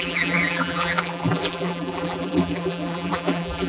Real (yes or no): no